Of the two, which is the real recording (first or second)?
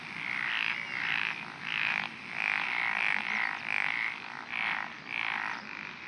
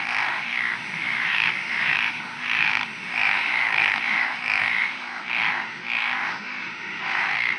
first